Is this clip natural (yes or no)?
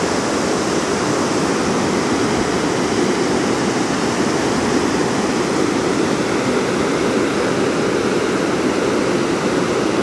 yes